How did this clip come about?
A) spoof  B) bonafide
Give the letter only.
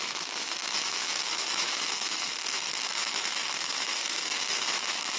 A